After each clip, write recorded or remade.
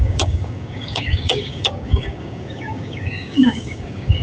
remade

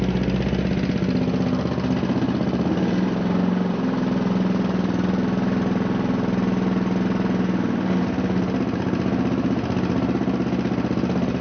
recorded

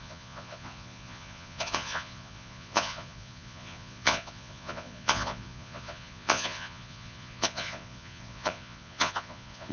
remade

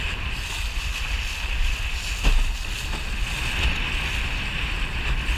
recorded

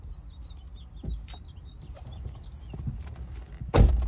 recorded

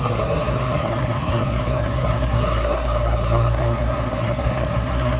remade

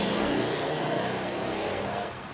remade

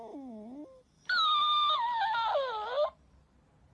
recorded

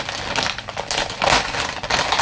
recorded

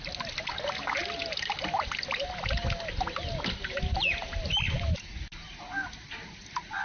recorded